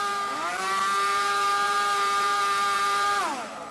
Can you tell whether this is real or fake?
fake